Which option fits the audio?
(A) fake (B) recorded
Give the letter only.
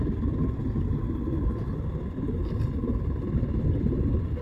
B